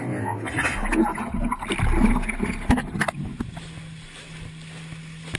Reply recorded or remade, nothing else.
recorded